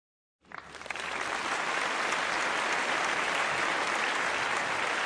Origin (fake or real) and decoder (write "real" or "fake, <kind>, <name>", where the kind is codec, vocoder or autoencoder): real